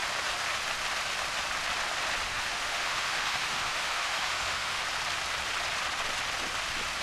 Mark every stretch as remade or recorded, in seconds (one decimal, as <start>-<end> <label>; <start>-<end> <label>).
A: 0.0-2.3 recorded; 2.3-4.8 remade; 4.8-7.0 recorded